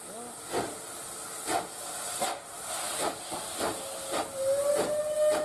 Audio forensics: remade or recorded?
recorded